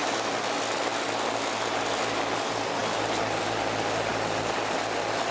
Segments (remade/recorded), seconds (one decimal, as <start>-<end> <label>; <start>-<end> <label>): 0.0-5.3 recorded